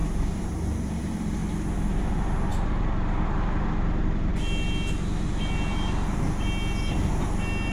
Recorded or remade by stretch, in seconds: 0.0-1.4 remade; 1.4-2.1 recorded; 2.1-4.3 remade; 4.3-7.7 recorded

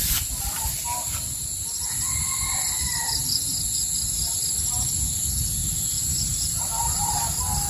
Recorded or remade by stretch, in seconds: 0.0-5.6 recorded; 5.6-7.7 remade

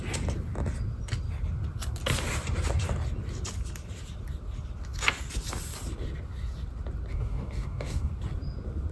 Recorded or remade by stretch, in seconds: 0.0-7.1 recorded; 7.1-8.1 remade; 8.1-8.9 recorded

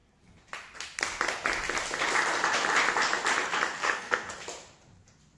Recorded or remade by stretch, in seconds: 0.0-3.8 recorded; 3.8-4.3 remade; 4.3-5.4 recorded

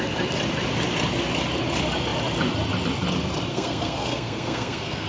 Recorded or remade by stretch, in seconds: 0.0-3.5 recorded; 3.5-5.1 remade

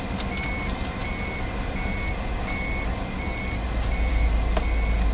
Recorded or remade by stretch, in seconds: 0.0-5.1 recorded